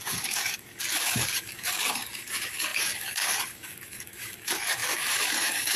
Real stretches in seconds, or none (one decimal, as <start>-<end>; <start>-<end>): none